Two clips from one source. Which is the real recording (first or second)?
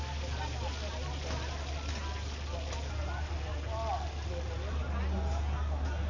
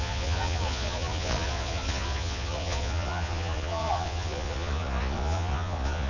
first